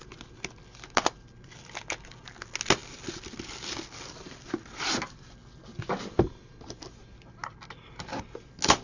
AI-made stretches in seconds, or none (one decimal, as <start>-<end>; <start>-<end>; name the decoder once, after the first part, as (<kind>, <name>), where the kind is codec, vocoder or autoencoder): none

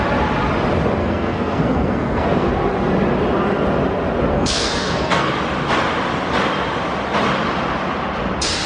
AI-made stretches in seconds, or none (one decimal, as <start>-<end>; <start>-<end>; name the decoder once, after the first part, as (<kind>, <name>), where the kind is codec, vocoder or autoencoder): 1.0-2.5 (codec, SNAC); 4.3-5.3

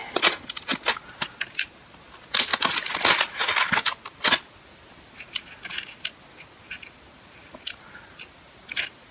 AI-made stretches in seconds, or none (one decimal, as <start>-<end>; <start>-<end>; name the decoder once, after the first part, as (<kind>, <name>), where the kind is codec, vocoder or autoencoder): none

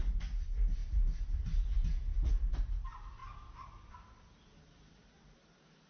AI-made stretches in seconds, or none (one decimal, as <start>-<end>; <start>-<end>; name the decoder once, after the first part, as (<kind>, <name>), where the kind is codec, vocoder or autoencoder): none